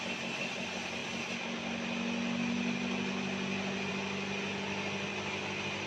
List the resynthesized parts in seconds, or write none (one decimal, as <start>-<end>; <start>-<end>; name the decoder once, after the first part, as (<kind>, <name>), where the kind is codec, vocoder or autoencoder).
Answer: none